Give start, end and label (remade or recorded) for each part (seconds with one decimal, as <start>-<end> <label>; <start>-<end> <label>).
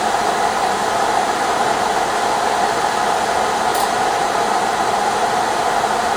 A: 0.0-0.8 recorded; 0.8-2.3 remade; 2.3-3.7 recorded; 3.7-5.6 remade; 5.6-6.2 recorded